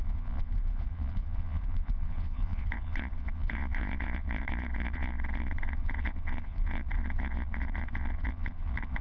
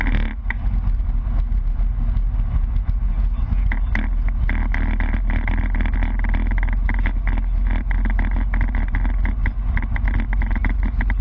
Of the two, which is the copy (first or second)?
first